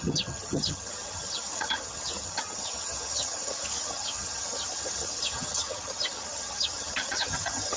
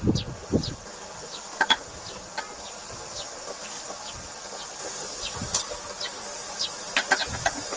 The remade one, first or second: first